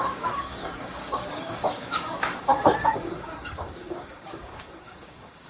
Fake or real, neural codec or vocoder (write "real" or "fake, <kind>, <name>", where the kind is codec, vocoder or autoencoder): fake, codec, DAC